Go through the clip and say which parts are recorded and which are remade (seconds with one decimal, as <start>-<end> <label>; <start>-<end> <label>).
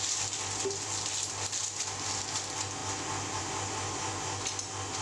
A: 0.0-5.0 recorded